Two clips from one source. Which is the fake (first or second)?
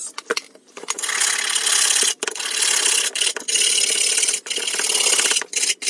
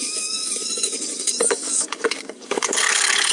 second